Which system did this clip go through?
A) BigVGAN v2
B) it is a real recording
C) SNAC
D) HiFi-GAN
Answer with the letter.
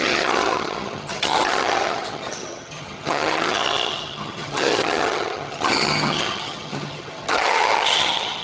D